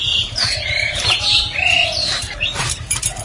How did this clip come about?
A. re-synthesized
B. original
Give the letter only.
A